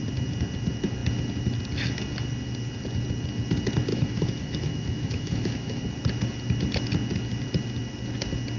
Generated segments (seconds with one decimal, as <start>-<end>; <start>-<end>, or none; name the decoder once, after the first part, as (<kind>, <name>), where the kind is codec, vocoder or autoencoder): 3.9-5.8 (autoencoder, DAC-VAE)